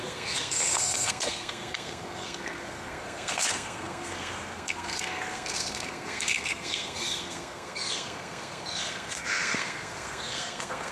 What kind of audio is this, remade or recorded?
remade